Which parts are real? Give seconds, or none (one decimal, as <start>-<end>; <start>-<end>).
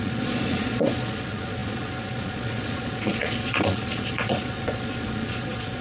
none